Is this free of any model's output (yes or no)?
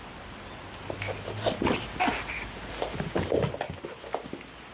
yes